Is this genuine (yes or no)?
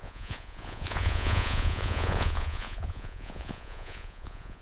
no